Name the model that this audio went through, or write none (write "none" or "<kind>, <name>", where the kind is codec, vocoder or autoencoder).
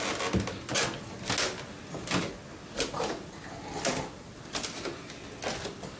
none